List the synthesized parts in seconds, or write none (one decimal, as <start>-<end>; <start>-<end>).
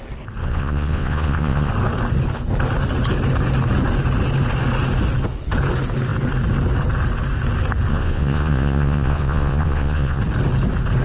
0.4-1.7; 7.9-10.2